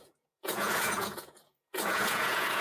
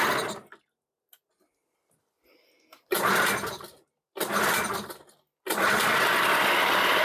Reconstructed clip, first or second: first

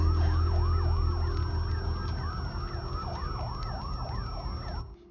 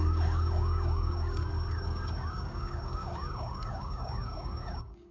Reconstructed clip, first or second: second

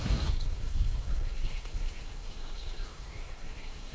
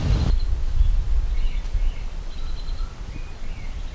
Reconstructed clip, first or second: first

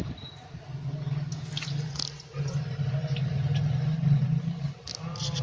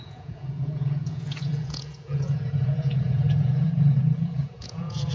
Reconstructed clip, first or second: second